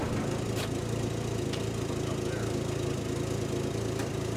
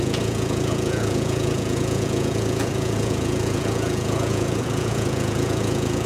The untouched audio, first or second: first